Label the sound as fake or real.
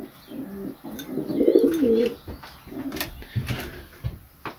real